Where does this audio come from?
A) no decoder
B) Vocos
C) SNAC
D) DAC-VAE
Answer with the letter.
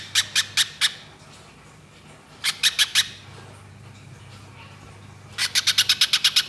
A